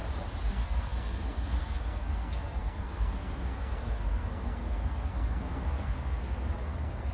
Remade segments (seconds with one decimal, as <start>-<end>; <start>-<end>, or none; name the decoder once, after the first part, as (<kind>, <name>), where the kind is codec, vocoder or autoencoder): 0.5-7.1 (codec, SNAC)